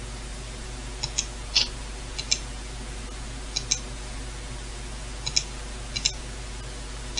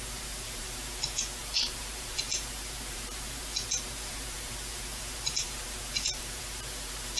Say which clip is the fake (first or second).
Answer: second